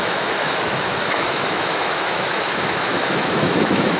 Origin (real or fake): fake